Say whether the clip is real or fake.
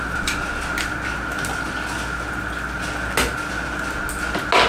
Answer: real